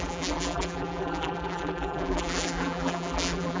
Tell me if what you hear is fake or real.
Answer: fake